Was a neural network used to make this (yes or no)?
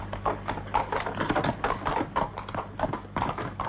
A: no